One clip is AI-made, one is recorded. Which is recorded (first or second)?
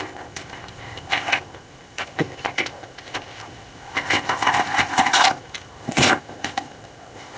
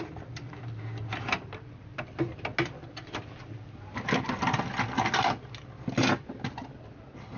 second